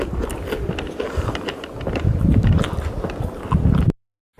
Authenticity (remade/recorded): recorded